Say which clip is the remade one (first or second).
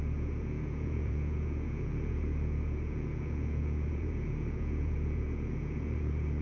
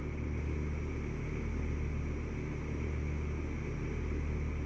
first